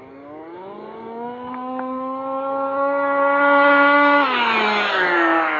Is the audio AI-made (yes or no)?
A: yes